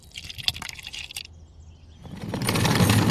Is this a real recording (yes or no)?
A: yes